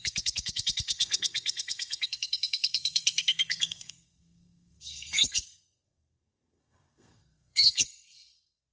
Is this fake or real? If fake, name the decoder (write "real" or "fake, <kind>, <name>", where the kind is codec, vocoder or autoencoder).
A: fake, codec, SNAC